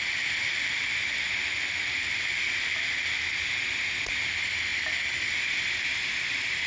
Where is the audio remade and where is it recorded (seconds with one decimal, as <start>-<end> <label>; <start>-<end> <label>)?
0.0-6.7 recorded